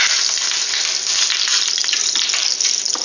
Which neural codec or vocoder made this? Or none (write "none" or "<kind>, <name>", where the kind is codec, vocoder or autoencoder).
none